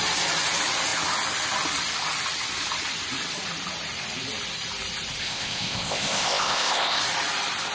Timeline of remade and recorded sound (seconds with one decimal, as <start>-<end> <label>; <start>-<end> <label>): 0.0-5.2 recorded; 5.2-7.0 remade; 7.0-7.7 recorded